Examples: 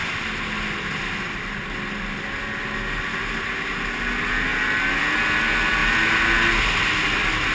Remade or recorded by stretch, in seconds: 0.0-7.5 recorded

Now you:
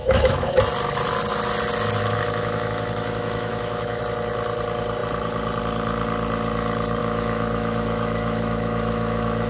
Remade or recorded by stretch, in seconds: 0.0-0.6 remade; 0.6-2.0 recorded; 2.0-4.0 remade; 4.0-7.0 recorded; 7.0-9.5 remade